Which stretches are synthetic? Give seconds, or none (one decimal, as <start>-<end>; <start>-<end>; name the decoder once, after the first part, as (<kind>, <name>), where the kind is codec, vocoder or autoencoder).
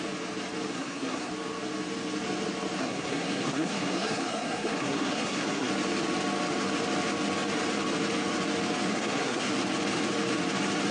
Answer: 0.7-1.3 (codec, SNAC); 2.8-5.7; 8.9-9.5